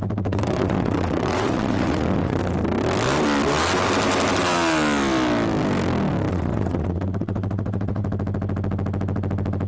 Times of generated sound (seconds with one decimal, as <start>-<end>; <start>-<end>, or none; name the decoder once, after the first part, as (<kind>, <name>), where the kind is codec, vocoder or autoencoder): 0.0-2.4 (vocoder, WaveNeXt); 6.3-8.0